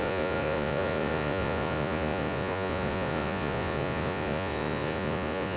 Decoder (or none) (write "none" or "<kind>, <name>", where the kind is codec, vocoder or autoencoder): vocoder, Vocos